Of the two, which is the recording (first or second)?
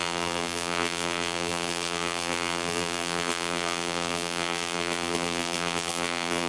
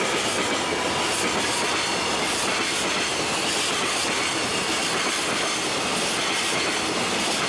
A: second